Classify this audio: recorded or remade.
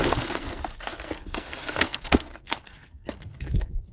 remade